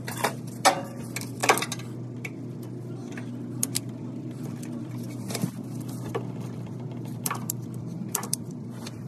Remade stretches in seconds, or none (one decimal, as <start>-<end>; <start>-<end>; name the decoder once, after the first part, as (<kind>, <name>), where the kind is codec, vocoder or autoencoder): 0.0-1.4 (vocoder, BigVGAN v2); 3.8-9.1